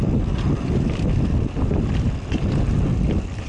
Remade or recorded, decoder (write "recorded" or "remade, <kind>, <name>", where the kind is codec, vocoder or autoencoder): recorded